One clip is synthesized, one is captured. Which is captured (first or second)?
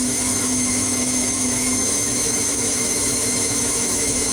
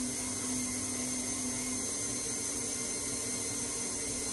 second